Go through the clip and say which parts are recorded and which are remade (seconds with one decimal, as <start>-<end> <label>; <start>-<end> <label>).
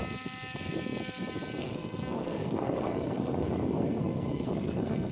0.0-1.6 recorded; 1.6-5.1 remade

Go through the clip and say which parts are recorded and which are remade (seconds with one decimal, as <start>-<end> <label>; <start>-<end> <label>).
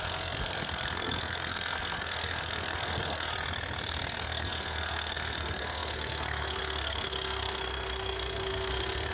0.0-3.3 remade; 3.3-4.2 recorded; 4.2-9.1 remade